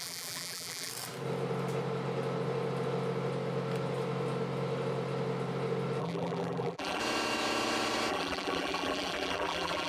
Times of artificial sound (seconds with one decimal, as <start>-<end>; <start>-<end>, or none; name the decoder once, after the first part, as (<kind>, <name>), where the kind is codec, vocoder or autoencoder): 0.0-0.9 (vocoder, BigVGAN v2); 6.0-7.0; 8.1-9.9